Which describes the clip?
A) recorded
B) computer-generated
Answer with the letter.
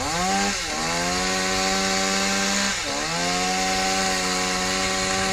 A